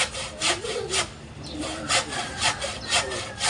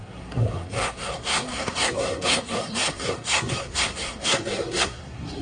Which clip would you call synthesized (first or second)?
second